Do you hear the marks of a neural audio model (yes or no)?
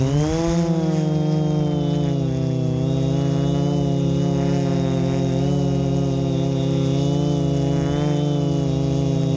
no